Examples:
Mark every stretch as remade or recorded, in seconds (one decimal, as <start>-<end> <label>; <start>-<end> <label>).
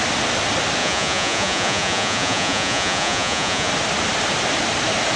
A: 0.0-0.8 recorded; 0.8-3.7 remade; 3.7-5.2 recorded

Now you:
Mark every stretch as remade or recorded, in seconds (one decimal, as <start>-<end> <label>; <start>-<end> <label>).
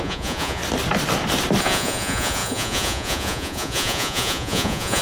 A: 0.0-0.6 remade; 0.6-1.6 recorded; 1.6-5.0 remade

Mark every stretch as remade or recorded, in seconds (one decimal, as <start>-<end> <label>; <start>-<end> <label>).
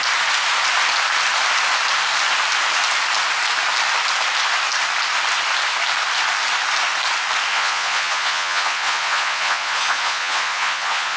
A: 0.0-7.5 recorded; 7.5-11.2 remade